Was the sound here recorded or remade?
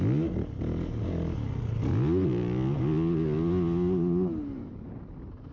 recorded